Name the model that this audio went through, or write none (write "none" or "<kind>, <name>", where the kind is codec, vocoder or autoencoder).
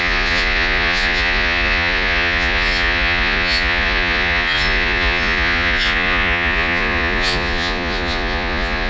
vocoder, Vocos